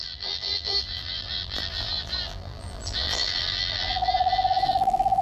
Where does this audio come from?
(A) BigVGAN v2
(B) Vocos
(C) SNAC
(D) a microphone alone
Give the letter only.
A